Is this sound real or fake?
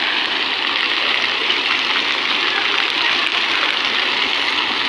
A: real